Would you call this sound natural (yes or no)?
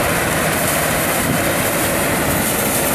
no